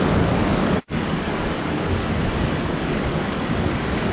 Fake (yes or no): yes